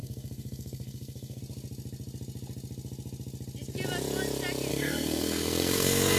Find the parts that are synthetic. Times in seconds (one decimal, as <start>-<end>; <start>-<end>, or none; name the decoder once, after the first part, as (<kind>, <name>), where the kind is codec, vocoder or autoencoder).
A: 0.0-1.4 (codec, SNAC); 4.7-6.2